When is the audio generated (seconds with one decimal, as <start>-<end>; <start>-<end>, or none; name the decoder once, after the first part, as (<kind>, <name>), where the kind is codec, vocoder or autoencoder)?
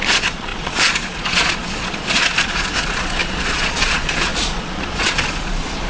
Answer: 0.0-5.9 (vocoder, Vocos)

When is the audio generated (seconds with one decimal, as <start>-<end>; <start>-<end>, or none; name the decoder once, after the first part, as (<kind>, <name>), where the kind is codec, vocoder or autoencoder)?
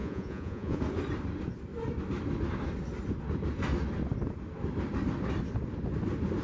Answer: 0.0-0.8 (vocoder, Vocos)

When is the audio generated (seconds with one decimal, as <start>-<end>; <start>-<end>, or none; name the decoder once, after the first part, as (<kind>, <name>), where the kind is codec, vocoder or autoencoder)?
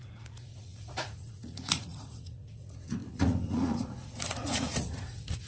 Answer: 0.0-5.5 (vocoder, Vocos)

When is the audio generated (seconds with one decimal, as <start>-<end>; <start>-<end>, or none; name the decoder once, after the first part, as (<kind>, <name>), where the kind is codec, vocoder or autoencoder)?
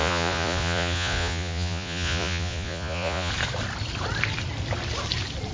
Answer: 0.0-3.3 (vocoder, Vocos)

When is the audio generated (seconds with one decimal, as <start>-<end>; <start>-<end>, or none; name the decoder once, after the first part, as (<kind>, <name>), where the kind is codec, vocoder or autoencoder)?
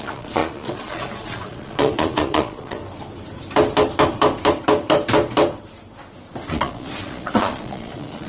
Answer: 0.0-2.8 (vocoder, Vocos); 6.5-8.3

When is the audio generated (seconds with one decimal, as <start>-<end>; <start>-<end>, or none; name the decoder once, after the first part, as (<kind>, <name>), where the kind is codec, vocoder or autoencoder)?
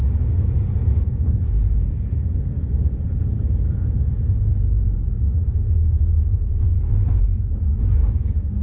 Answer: 0.0-8.6 (vocoder, Vocos)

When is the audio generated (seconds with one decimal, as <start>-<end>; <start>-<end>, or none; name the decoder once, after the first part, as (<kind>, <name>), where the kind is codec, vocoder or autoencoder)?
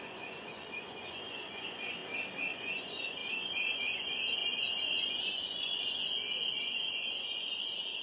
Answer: 0.0-2.0 (vocoder, Vocos); 2.5-8.0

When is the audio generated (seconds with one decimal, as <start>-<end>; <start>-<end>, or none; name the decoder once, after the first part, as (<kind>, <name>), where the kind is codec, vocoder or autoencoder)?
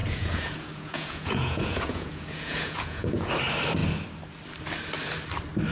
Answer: 0.0-3.3 (vocoder, Vocos)